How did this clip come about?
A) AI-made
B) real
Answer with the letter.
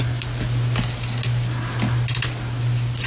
B